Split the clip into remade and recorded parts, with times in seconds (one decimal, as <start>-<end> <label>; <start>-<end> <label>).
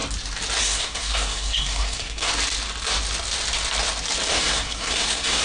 0.0-0.6 recorded; 0.6-2.3 remade; 2.3-4.3 recorded; 4.3-5.4 remade